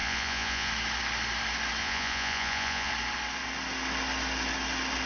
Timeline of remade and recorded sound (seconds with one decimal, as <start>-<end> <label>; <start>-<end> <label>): 0.0-0.7 remade; 0.7-1.8 recorded; 1.8-2.9 remade; 2.9-5.1 recorded